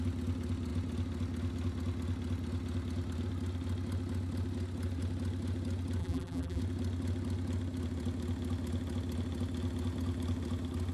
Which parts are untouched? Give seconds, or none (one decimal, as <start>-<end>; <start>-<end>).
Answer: 0.0-6.0; 6.6-10.9